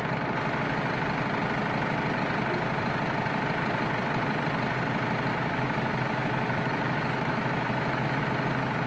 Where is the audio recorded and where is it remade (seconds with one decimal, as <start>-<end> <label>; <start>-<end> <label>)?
0.0-5.3 recorded; 5.3-8.2 remade; 8.2-8.9 recorded